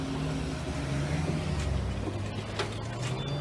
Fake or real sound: real